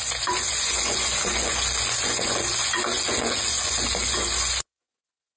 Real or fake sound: fake